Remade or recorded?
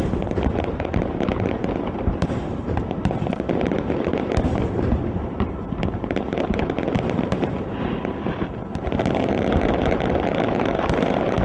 remade